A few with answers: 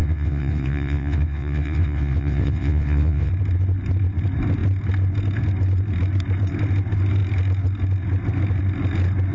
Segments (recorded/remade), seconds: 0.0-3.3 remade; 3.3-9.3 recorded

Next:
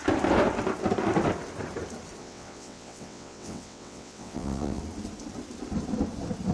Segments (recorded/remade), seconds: 0.0-2.2 recorded; 2.2-4.8 remade; 4.8-6.5 recorded